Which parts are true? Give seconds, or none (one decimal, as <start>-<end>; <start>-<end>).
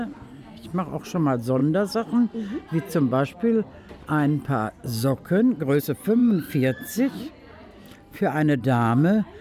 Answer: 0.0-9.4